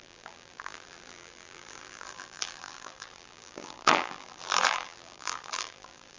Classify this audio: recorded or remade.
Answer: remade